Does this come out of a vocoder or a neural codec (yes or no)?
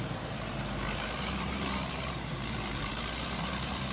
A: yes